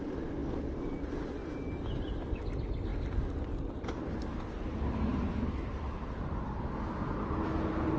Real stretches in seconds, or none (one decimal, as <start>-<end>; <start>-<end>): 0.0-8.0